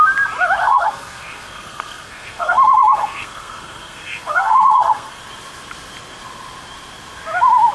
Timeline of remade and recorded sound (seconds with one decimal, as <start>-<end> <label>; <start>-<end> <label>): 0.0-0.6 recorded; 0.6-5.2 remade; 5.2-7.7 recorded